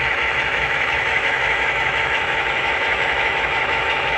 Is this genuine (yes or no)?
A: no